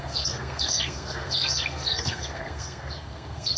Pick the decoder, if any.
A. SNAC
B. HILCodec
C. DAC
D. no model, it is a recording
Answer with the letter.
A